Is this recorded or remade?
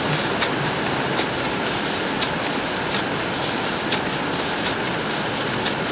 recorded